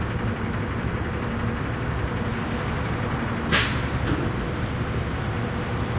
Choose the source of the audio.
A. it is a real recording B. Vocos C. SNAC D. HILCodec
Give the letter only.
A